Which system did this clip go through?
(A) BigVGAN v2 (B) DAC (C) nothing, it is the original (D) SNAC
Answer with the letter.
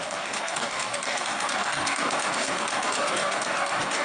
B